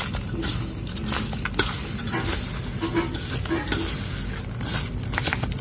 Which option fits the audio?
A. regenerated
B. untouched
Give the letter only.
B